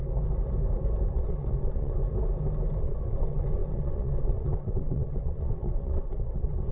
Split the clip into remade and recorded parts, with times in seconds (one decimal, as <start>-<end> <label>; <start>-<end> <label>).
0.0-1.1 recorded; 1.1-2.0 remade; 2.0-2.8 recorded; 2.8-6.7 remade